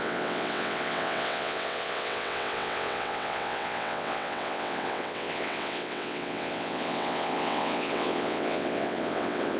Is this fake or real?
fake